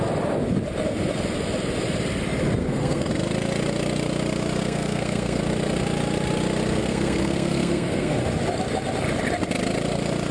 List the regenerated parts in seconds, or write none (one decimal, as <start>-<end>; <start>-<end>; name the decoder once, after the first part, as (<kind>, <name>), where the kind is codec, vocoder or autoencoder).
2.6-3.1 (codec, SNAC); 4.6-5.4; 6.8-8.2

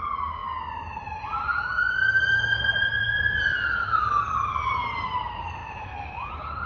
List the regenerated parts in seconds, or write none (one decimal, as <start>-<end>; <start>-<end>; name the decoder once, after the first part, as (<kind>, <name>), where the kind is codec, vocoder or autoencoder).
none